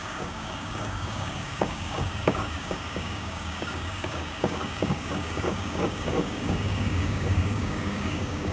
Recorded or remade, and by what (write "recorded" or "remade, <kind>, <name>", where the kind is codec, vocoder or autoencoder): remade, codec, DAC